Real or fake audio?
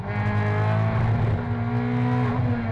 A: real